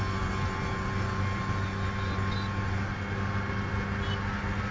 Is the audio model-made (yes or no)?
no